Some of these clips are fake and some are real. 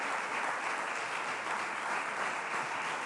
real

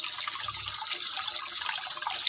real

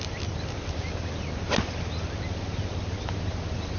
real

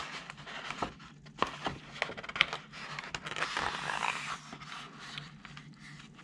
real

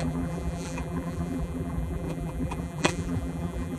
fake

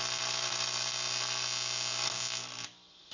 real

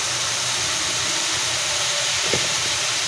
fake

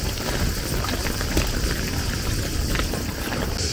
real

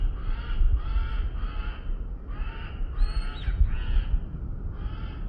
real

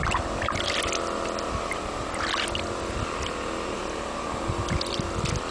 real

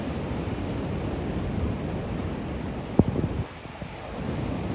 fake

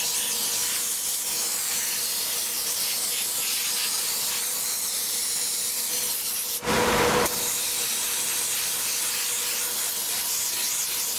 fake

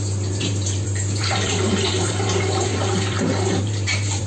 fake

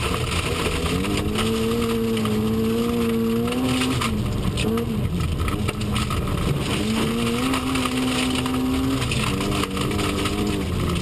real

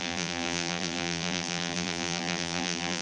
fake